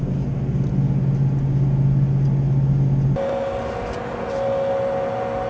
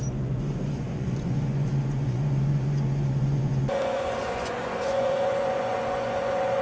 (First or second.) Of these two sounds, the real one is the first